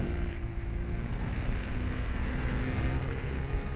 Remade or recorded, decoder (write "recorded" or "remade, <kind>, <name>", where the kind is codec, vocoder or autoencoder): remade, codec, SNAC